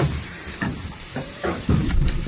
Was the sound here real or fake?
fake